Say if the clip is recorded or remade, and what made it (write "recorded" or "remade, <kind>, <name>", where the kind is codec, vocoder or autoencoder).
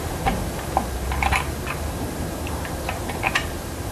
remade, vocoder, BigVGAN v2